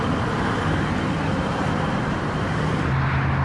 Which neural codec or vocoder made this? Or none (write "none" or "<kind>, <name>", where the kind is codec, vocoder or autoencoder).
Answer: none